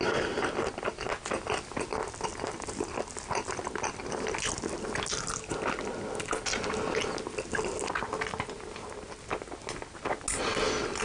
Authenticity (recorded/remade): recorded